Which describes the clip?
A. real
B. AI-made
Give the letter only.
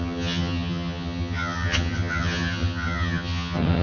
B